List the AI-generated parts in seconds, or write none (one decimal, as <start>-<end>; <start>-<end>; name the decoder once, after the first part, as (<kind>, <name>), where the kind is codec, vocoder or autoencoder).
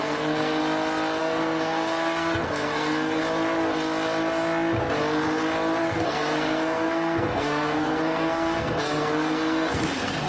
0.0-0.6 (codec, SNAC); 1.2-3.2; 5.8-10.3